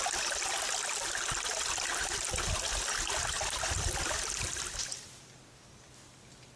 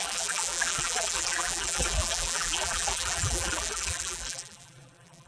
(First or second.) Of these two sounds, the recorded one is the first